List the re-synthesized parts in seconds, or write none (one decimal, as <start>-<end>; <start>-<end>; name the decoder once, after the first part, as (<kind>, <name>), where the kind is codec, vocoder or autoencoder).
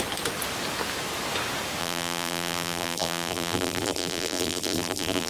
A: 1.8-5.3 (vocoder, BigVGAN v2)